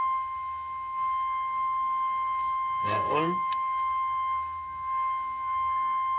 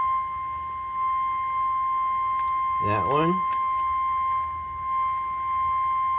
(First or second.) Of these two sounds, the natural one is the second